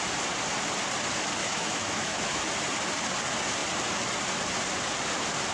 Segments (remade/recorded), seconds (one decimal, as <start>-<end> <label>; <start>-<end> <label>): 0.0-1.4 recorded; 1.4-2.4 remade; 2.4-5.5 recorded